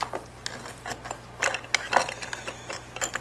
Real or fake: real